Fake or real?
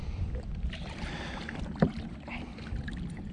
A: real